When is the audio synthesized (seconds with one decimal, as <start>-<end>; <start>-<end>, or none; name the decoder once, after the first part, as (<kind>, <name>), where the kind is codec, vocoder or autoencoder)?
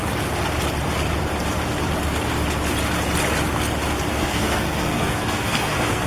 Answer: 4.1-6.1 (codec, SNAC)